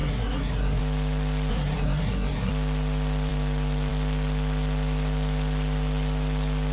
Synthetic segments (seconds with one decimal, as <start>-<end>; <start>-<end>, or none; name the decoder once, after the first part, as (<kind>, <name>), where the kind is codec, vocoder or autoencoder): 0.0-0.8 (codec, SNAC); 1.5-2.5